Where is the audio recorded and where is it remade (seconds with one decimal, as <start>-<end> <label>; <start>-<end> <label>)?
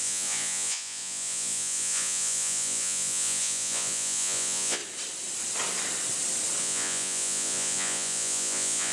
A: 0.0-4.8 remade; 4.8-6.6 recorded; 6.6-8.9 remade